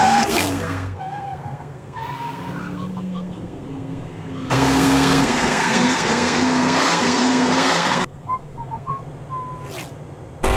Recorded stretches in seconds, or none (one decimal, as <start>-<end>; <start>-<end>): 9.0-10.6